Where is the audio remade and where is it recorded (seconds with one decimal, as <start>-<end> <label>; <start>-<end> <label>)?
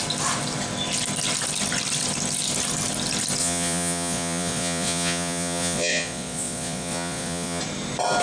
0.0-3.4 recorded; 3.4-7.6 remade; 7.6-8.2 recorded